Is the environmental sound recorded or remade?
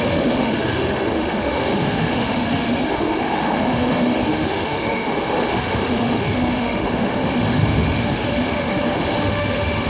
remade